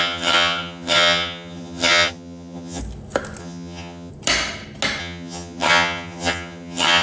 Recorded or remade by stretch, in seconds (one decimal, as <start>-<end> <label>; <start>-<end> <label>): 0.0-2.8 remade; 2.8-3.4 recorded; 3.4-4.1 remade; 4.1-5.0 recorded; 5.0-7.0 remade